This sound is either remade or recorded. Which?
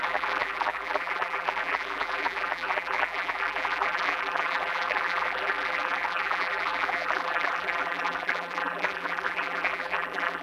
remade